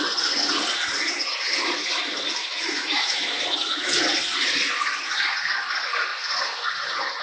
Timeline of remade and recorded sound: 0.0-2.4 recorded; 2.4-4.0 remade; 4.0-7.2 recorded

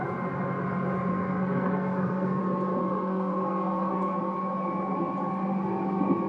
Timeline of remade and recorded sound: 0.0-1.1 recorded; 1.1-2.4 remade; 2.4-2.8 recorded; 2.8-4.2 remade; 4.2-6.3 recorded

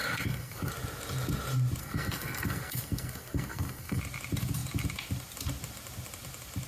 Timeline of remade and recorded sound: 0.0-0.7 remade; 0.7-1.8 recorded; 1.8-4.0 remade; 4.0-6.7 recorded